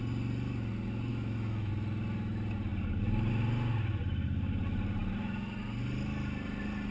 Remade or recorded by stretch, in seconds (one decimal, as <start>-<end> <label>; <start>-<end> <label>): 0.0-1.1 recorded; 1.1-1.7 remade; 1.7-6.9 recorded